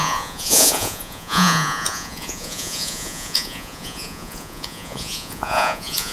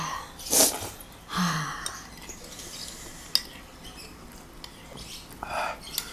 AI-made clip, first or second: first